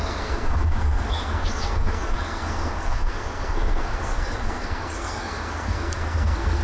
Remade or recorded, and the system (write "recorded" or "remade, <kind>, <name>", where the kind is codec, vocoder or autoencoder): remade, codec, SNAC